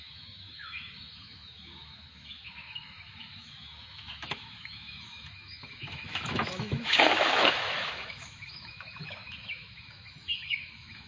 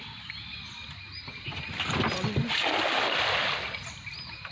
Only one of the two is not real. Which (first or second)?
first